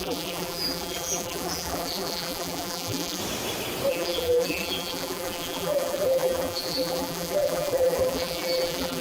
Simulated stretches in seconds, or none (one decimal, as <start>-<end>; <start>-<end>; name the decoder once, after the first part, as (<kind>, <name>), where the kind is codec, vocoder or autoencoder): 0.0-3.2 (vocoder, BigVGAN v2); 3.9-9.0